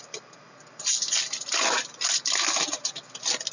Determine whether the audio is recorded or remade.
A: recorded